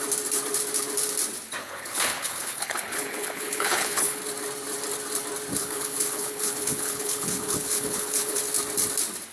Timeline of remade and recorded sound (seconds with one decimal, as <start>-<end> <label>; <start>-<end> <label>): 0.0-1.6 recorded; 1.6-4.2 remade; 4.2-5.6 recorded; 5.6-8.4 remade; 8.4-9.3 recorded